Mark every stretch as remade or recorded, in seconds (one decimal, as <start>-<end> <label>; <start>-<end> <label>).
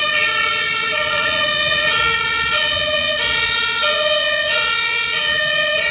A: 0.0-5.9 remade